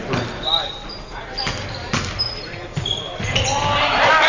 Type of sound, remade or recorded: recorded